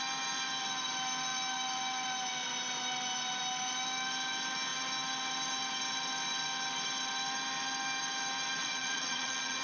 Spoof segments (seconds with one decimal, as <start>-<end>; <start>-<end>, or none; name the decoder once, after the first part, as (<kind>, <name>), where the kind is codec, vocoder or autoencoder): 8.6-9.6 (vocoder, Vocos)